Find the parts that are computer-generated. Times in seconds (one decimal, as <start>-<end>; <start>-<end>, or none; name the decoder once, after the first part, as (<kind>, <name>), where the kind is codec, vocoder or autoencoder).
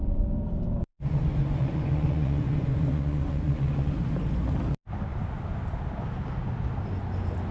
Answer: 0.9-3.9 (vocoder, Vocos)